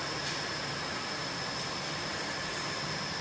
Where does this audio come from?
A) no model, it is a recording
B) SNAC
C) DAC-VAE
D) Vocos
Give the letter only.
A